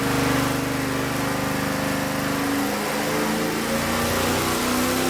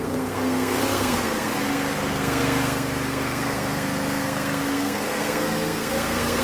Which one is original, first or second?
first